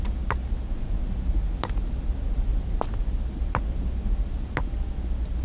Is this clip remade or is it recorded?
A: recorded